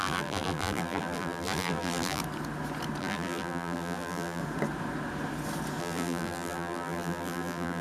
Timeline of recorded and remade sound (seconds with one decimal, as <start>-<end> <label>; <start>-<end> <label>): 0.0-2.2 remade; 2.2-3.0 recorded; 3.0-4.4 remade; 4.4-5.8 recorded; 5.8-7.8 remade